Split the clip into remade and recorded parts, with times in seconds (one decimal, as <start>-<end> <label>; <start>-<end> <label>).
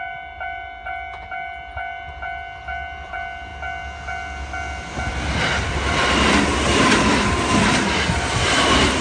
0.0-9.0 recorded